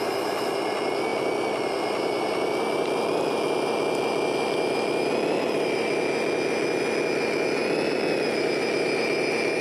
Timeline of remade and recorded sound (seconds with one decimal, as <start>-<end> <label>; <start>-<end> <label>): 0.0-9.6 recorded